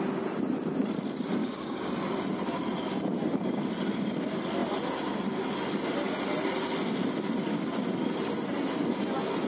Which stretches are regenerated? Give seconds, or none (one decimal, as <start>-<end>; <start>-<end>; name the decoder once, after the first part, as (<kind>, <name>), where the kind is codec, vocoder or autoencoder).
1.4-1.9 (codec, DAC)